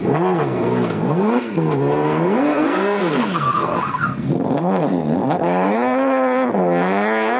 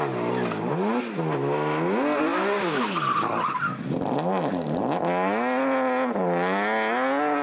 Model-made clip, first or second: first